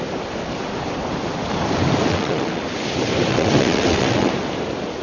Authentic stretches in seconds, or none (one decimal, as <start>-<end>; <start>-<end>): 0.0-2.1; 2.6-3.3; 4.3-5.0